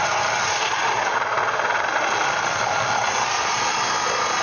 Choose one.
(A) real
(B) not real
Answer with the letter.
A